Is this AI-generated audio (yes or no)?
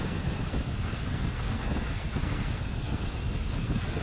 yes